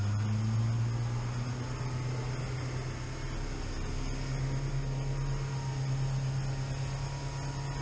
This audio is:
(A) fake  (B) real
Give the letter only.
B